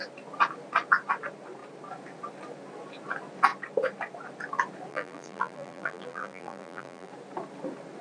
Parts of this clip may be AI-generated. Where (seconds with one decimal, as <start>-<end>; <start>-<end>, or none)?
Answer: 4.9-7.1

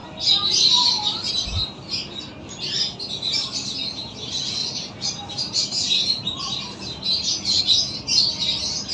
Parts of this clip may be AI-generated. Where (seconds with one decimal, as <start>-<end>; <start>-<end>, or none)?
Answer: 0.0-1.3; 4.6-7.6

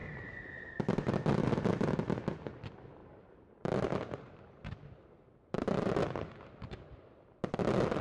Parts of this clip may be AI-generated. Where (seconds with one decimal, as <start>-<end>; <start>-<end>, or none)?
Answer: 0.0-0.8; 3.0-7.4

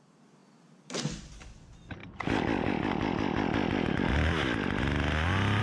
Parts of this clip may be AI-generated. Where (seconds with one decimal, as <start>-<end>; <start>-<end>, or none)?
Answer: none

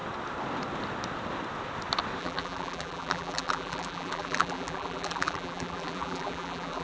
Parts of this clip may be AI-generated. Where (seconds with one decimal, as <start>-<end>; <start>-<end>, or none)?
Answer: 2.2-6.8

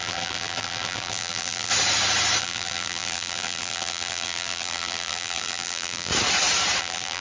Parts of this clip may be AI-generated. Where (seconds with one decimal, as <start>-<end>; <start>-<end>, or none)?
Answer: 0.0-1.7; 2.4-6.1; 6.8-7.2

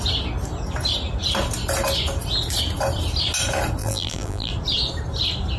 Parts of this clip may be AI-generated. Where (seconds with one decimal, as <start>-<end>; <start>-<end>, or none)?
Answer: 3.8-4.5

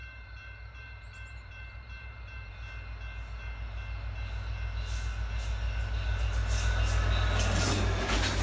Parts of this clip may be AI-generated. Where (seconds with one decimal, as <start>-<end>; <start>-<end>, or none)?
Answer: 0.0-2.5